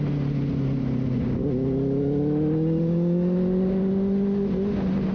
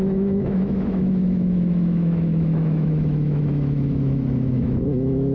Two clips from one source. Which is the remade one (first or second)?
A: second